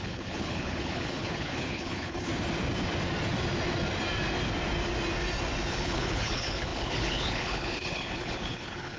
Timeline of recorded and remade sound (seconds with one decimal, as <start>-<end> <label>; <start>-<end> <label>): 0.0-2.3 remade; 2.3-5.7 recorded; 5.7-9.0 remade